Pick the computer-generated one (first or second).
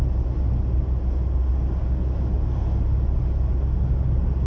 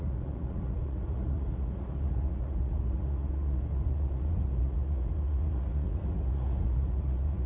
second